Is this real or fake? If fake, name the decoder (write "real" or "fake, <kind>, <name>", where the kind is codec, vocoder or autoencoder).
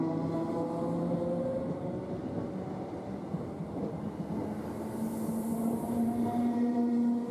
real